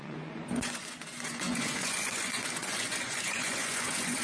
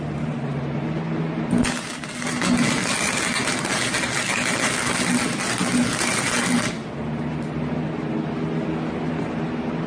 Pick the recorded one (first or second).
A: second